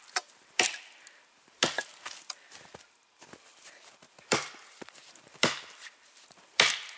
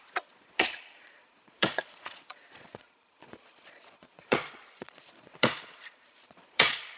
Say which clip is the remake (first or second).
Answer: second